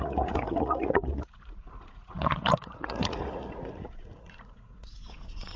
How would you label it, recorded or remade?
remade